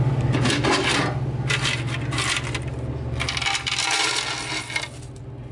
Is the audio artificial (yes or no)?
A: no